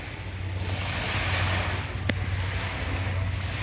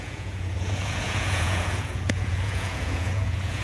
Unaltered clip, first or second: first